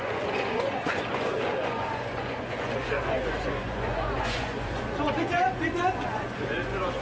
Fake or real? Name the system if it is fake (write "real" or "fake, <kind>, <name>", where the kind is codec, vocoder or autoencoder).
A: fake, vocoder, Vocos